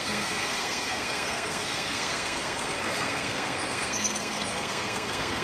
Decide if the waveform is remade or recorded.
remade